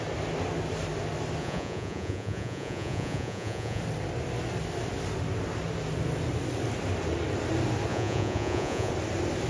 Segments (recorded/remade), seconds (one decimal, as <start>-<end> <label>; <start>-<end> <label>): 0.0-1.4 recorded; 1.4-3.8 remade; 3.8-7.9 recorded; 7.9-8.9 remade; 8.9-9.5 recorded